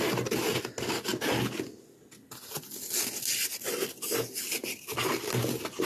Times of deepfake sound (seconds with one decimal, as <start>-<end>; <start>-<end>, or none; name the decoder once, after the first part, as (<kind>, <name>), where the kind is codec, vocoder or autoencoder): none